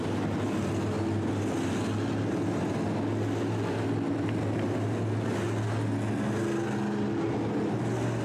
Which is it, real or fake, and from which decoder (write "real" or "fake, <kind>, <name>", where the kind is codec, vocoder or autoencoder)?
real